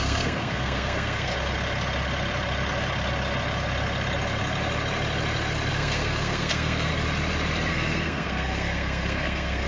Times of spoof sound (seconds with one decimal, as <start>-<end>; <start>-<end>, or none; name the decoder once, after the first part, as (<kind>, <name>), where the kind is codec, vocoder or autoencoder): 0.0-1.3 (codec, SNAC); 5.7-6.9; 7.7-9.7